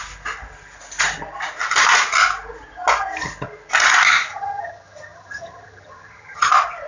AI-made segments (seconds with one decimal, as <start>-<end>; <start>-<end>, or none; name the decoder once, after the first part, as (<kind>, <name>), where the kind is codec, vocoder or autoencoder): 4.3-6.5 (vocoder, HiFi-GAN)